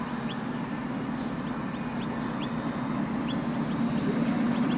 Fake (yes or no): no